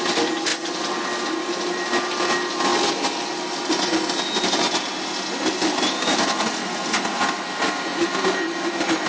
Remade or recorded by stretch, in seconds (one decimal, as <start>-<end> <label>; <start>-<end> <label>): 0.0-9.1 recorded